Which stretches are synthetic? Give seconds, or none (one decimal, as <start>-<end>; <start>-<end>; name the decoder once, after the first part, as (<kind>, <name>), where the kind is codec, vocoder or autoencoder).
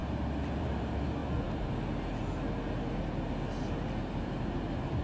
0.6-1.2 (vocoder, BigVGAN v2); 4.2-5.0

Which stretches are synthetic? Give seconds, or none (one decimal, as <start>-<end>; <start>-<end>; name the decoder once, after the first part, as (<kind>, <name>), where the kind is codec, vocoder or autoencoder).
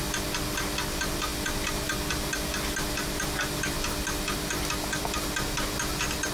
none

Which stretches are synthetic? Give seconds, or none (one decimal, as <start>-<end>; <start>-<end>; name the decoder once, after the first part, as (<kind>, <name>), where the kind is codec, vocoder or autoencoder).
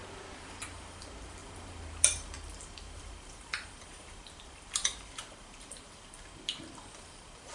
1.4-5.9 (vocoder, BigVGAN v2)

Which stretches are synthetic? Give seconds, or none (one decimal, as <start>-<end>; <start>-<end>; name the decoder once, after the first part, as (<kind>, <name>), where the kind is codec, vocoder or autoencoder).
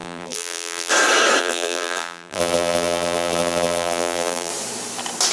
0.0-0.9 (vocoder, BigVGAN v2); 1.4-4.5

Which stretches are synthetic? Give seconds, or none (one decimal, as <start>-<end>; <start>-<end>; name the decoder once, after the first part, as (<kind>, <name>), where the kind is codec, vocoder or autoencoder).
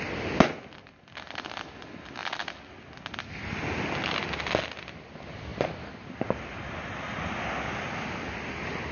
none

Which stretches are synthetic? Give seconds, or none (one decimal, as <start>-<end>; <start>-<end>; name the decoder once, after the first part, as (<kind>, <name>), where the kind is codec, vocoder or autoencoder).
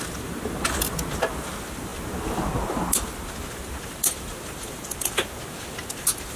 none